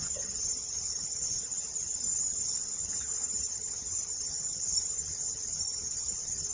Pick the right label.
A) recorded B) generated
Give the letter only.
B